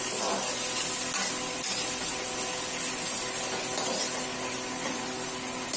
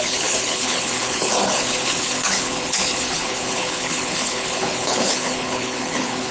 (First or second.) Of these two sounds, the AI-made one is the second